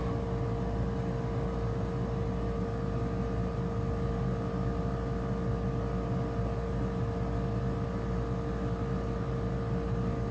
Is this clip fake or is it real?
real